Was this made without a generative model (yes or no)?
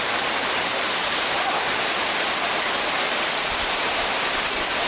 yes